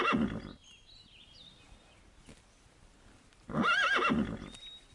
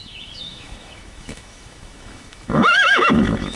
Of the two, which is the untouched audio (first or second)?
first